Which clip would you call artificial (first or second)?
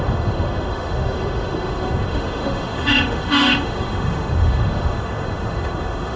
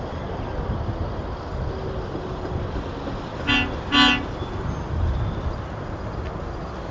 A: first